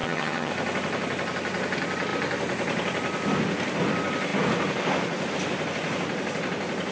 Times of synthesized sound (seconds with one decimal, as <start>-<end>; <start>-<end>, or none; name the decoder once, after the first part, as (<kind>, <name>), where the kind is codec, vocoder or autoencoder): 0.0-0.5 (vocoder, HiFi-GAN)